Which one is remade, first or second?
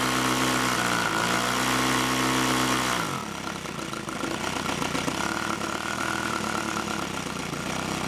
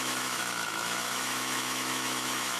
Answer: second